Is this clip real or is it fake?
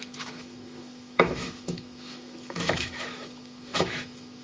fake